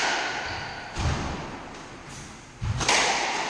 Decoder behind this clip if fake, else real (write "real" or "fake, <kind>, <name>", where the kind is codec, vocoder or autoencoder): real